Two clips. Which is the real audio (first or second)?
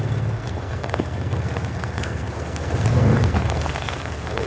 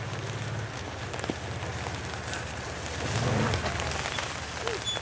second